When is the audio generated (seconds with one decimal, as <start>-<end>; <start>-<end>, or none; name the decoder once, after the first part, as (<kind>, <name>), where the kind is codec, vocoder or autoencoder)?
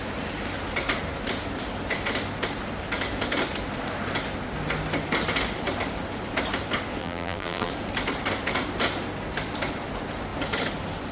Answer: 7.0-7.7 (vocoder, BigVGAN v2)